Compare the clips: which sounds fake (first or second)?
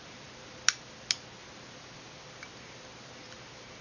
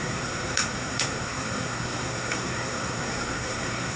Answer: second